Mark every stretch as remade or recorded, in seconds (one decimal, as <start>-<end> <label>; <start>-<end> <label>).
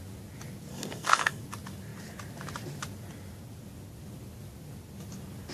0.0-0.7 recorded; 0.7-1.4 remade; 1.4-5.5 recorded